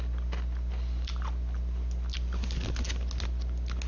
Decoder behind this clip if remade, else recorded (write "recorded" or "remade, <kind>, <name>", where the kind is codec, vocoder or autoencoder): recorded